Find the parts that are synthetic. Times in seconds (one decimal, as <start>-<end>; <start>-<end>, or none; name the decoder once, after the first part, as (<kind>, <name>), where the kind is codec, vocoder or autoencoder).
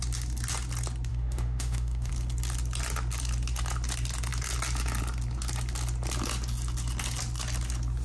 1.1-2.1 (autoencoder, DAC-VAE)